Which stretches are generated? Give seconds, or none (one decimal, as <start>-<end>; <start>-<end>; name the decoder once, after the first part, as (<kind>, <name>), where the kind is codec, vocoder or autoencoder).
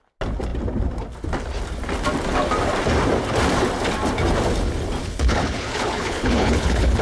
5.0-7.0 (codec, HILCodec)